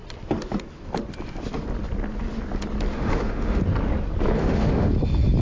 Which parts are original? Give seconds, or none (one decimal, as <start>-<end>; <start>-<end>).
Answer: 0.0-2.9; 3.6-4.4; 4.9-5.4